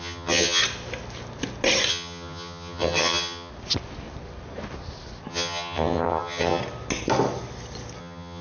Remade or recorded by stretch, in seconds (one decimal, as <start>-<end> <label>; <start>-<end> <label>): 0.0-0.6 remade; 0.6-1.9 recorded; 1.9-3.5 remade; 3.5-5.3 recorded; 5.3-6.6 remade; 6.6-8.0 recorded; 8.0-8.4 remade